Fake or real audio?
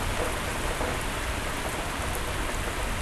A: real